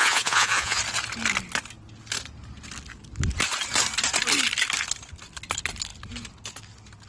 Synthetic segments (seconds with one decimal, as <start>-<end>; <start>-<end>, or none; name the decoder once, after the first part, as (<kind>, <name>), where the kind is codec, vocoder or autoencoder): 0.0-0.8 (vocoder, Vocos)